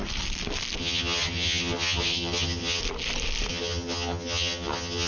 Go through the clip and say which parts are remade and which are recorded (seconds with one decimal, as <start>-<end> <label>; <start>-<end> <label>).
0.0-0.8 recorded; 0.8-2.8 remade; 2.8-3.5 recorded; 3.5-5.1 remade